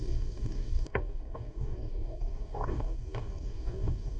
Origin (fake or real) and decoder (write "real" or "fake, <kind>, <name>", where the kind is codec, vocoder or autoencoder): fake, codec, DAC